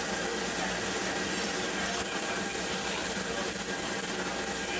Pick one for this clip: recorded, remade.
recorded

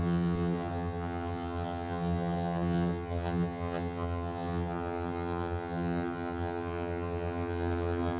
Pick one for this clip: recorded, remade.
remade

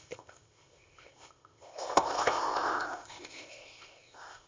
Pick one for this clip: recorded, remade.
remade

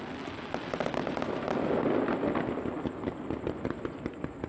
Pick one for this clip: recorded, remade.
recorded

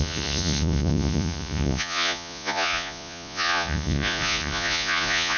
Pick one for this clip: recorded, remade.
remade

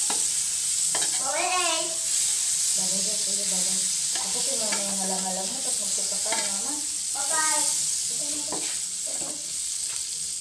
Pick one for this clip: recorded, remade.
recorded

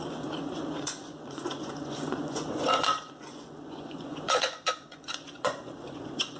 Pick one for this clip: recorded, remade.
remade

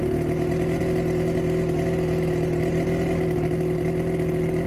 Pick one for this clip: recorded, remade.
recorded